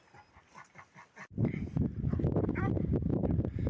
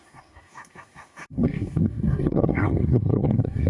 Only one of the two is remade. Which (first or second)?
second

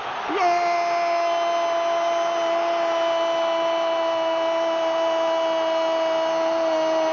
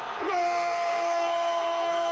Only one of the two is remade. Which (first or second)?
second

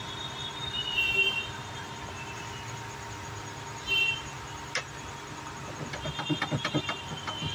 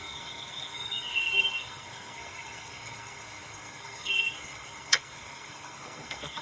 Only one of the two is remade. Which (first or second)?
second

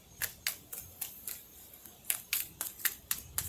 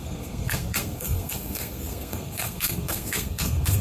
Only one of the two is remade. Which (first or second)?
second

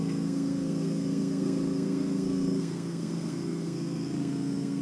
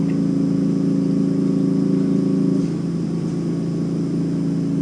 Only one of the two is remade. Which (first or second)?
first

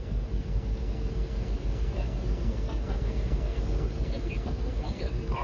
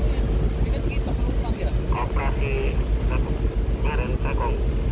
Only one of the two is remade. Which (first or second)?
first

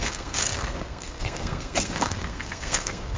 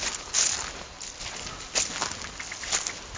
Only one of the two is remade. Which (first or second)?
first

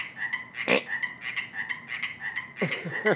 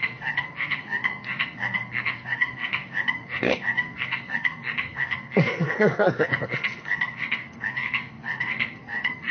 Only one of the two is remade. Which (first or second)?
second